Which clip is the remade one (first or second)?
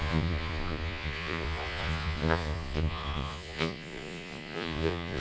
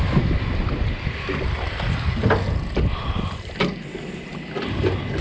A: first